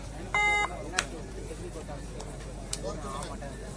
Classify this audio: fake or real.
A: fake